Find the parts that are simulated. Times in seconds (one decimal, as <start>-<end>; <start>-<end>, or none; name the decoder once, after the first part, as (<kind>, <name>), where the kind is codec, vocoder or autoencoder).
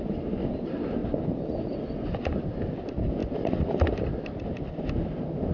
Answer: 3.2-5.5 (vocoder, BigVGAN v2)